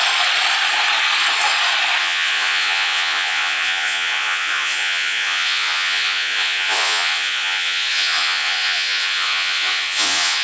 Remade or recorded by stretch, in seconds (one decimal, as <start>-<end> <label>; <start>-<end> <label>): 0.0-2.0 recorded; 2.0-10.4 remade